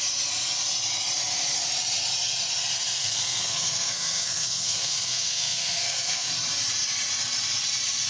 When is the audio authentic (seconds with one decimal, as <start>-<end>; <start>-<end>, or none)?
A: 0.0-3.0; 6.3-8.1